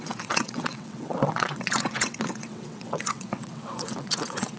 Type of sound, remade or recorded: remade